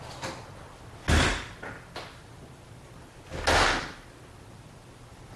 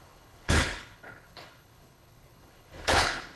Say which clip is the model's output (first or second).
second